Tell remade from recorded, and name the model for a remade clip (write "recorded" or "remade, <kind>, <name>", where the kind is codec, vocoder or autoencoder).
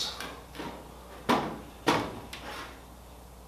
recorded